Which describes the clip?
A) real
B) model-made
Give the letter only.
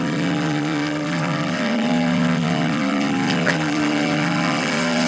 B